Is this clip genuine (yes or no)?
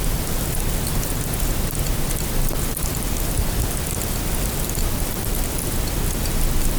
yes